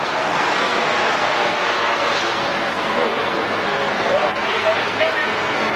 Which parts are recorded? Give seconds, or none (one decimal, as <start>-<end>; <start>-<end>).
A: none

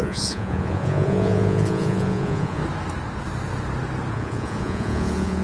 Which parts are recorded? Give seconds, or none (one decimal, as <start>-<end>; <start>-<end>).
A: 2.6-4.1

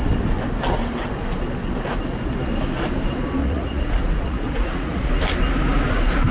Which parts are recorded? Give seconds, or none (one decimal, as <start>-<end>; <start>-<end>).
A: 0.0-3.4; 5.1-6.3

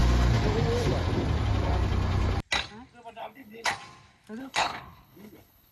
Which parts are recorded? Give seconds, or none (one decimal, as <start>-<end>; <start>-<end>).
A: 0.0-3.2; 3.7-4.4